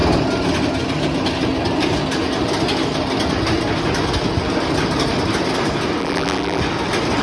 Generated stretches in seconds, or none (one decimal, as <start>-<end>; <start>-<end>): 6.0-6.6